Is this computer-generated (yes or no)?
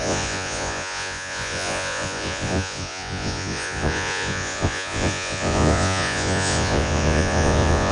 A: yes